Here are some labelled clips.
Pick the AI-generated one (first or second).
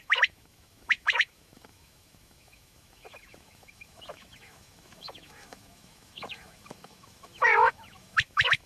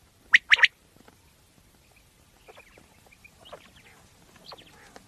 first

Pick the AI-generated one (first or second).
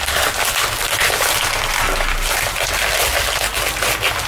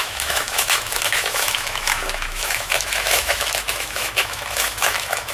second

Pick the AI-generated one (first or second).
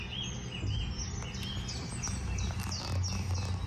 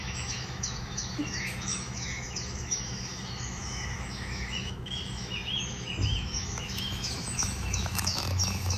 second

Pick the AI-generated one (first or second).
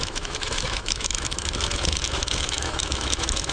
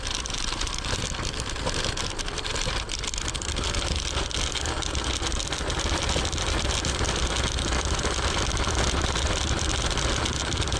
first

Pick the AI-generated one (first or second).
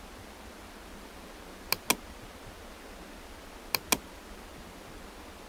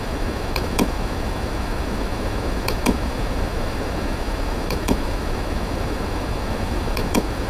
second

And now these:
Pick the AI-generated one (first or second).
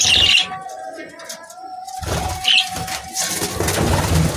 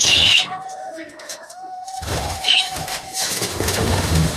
second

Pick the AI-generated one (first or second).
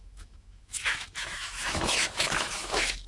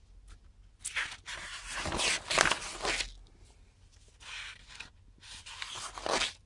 first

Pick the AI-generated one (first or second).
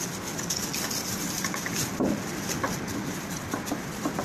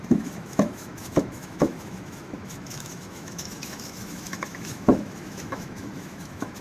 second